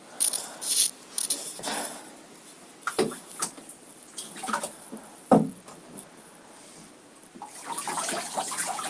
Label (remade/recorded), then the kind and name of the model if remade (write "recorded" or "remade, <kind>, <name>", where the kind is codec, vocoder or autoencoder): recorded